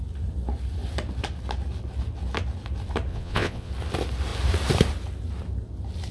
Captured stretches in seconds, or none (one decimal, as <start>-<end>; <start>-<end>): 0.0-3.1; 3.7-6.1